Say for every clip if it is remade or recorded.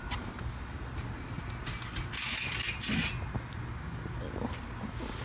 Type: recorded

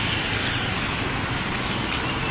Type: recorded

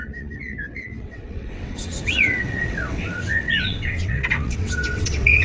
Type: remade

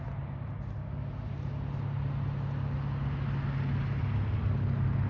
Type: recorded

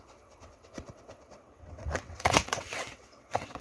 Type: remade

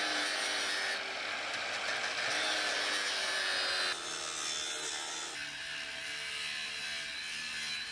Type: recorded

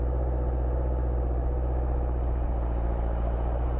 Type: recorded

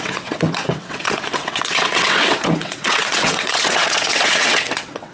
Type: remade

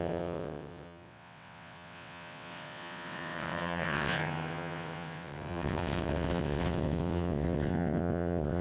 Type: remade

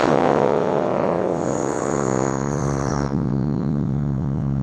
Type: remade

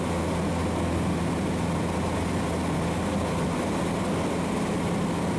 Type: recorded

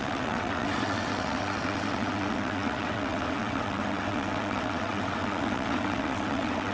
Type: remade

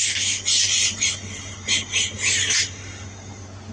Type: recorded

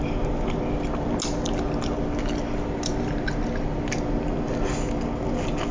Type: recorded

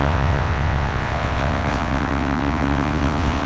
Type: remade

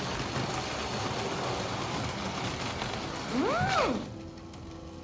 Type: recorded